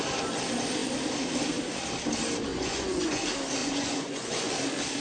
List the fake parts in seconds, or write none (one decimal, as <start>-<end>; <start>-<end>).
2.5-3.2; 3.6-4.5